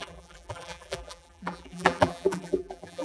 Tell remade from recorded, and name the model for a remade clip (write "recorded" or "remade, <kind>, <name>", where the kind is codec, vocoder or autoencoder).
remade, vocoder, BigVGAN v2